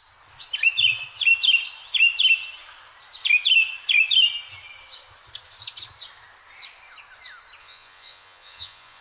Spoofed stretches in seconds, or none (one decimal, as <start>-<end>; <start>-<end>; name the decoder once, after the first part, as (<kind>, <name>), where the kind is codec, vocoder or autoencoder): 7.6-9.0 (vocoder, Vocos)